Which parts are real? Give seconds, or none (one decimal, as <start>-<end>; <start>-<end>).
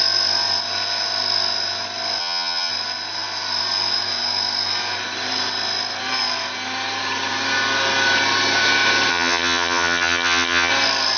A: 0.0-2.2; 2.7-9.1; 10.7-11.2